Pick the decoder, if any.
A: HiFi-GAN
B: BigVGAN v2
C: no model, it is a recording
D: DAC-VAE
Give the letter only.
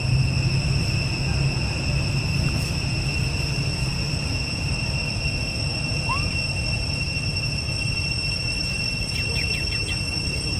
C